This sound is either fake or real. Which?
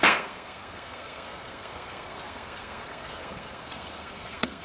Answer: fake